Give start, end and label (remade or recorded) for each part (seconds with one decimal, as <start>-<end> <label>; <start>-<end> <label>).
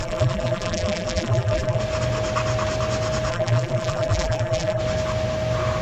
0.0-1.8 remade; 1.8-3.3 recorded; 3.3-4.8 remade; 4.8-5.8 recorded